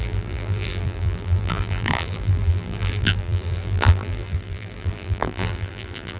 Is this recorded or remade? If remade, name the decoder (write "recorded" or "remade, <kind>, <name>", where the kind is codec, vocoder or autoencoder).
remade, vocoder, BigVGAN v2